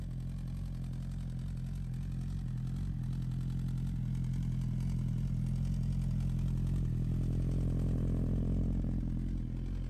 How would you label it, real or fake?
real